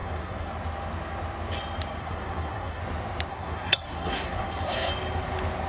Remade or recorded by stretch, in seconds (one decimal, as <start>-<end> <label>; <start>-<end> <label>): 0.0-0.5 remade; 0.5-2.0 recorded; 2.0-2.8 remade; 2.8-3.3 recorded; 3.3-4.9 remade; 4.9-5.7 recorded

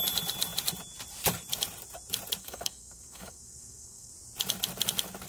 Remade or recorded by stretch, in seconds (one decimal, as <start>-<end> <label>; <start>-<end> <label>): 0.0-2.4 recorded; 2.4-4.1 remade; 4.1-5.3 recorded

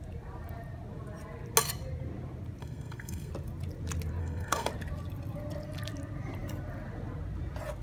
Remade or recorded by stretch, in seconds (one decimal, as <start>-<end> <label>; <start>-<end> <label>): 0.0-2.6 recorded; 2.6-3.3 remade; 3.3-4.2 recorded; 4.2-4.7 remade; 4.7-7.8 recorded

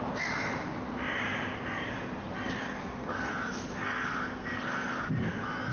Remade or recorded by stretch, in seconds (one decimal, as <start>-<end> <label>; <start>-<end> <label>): 0.0-2.6 recorded; 2.6-3.3 remade; 3.3-3.7 recorded; 3.7-5.1 remade; 5.1-5.7 recorded

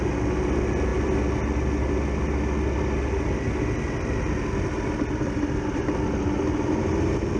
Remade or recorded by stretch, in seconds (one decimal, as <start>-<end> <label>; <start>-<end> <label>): 0.0-7.4 recorded

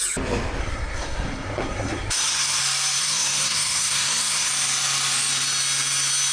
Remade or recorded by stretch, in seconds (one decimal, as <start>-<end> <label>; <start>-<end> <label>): 0.0-0.6 recorded; 0.6-2.6 remade; 2.6-3.0 recorded; 3.0-4.5 remade; 4.5-6.3 recorded

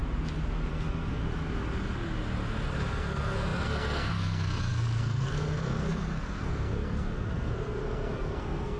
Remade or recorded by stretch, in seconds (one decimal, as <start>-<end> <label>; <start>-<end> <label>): 0.0-0.7 recorded; 0.7-1.2 remade; 1.2-2.7 recorded; 2.7-8.8 remade